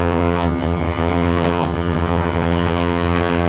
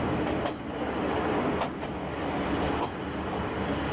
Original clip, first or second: second